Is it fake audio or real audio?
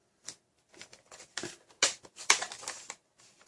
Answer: real